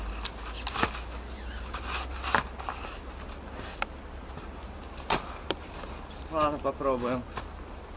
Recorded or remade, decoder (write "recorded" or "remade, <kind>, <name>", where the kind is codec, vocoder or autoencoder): recorded